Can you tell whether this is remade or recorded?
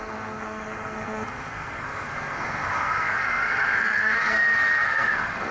remade